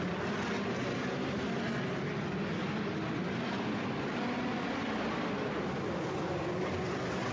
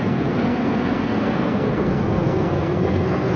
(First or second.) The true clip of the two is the first